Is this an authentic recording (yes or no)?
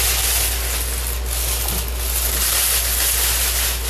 yes